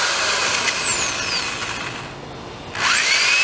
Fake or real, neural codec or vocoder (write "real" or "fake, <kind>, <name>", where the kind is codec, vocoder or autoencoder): real